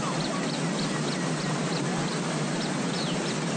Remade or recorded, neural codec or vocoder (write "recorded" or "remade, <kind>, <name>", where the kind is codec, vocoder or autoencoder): recorded